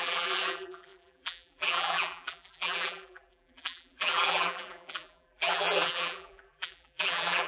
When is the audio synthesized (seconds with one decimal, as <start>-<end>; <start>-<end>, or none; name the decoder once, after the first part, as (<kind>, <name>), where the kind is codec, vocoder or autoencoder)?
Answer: 0.0-7.5 (vocoder, BigVGAN v2)